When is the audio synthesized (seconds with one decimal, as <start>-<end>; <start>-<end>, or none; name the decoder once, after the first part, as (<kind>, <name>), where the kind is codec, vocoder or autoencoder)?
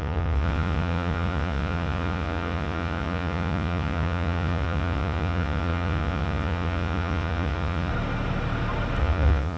0.0-7.9 (vocoder, Vocos); 9.0-9.6